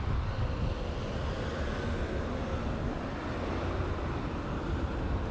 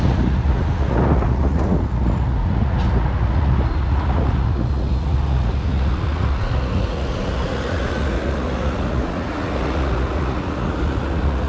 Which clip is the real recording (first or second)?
first